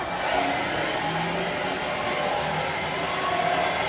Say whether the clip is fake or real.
real